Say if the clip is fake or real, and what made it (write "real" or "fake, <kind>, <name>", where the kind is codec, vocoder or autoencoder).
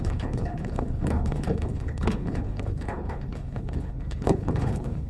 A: fake, codec, HILCodec